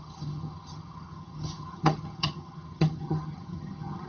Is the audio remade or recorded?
remade